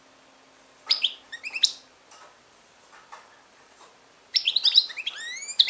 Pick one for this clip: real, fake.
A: real